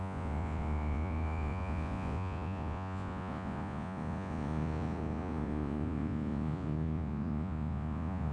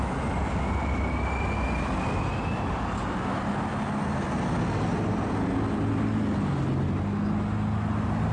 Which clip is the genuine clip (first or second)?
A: second